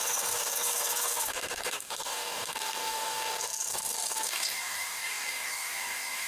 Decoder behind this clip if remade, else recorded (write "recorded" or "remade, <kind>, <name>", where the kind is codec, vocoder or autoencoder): remade, codec, DAC